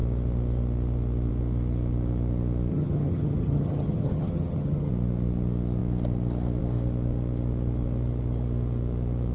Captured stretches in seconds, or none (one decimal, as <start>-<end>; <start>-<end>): 0.0-2.7; 4.9-9.3